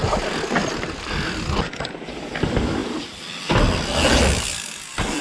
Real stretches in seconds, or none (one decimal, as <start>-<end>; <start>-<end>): 0.0-5.2